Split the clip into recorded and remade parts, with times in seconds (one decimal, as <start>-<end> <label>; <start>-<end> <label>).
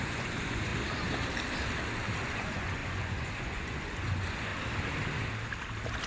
0.0-0.7 remade; 0.7-2.2 recorded; 2.2-4.5 remade; 4.5-6.1 recorded